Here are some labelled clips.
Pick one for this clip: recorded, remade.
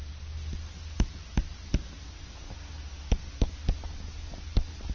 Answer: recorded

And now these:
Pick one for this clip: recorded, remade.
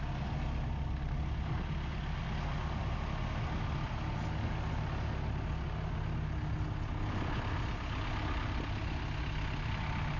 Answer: recorded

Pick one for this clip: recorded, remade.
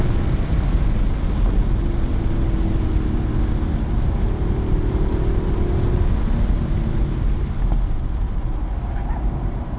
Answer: recorded